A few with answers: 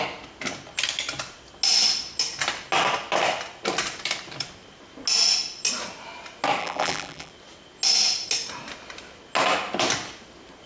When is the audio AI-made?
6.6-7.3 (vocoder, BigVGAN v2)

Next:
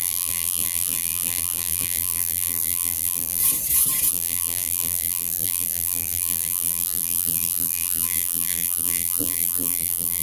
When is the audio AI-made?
0.0-3.4 (vocoder, BigVGAN v2); 4.1-10.2

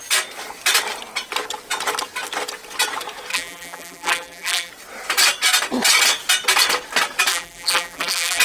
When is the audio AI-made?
3.3-4.7 (vocoder, BigVGAN v2); 7.3-8.4

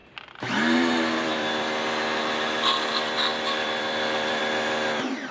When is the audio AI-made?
0.0-2.2 (vocoder, BigVGAN v2); 3.3-4.4

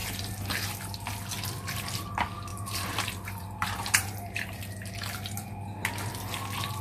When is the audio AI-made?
0.0-0.5 (vocoder, BigVGAN v2); 2.5-4.6

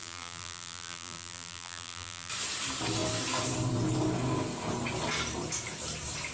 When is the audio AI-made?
0.0-2.3 (vocoder, BigVGAN v2)